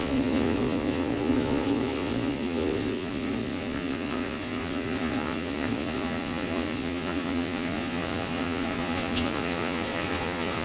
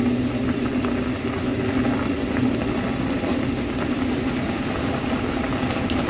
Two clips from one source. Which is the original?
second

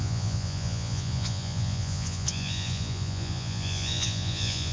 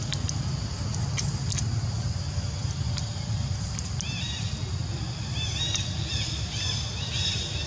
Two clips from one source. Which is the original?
second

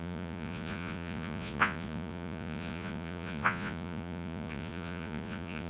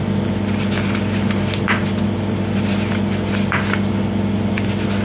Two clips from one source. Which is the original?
second